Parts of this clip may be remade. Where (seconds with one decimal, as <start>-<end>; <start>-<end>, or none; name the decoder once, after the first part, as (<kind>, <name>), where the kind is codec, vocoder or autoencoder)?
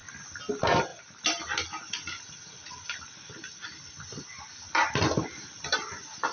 none